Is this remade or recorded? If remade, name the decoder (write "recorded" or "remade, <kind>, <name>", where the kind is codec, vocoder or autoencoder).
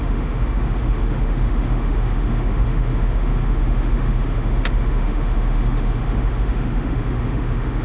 remade, autoencoder, DAC-VAE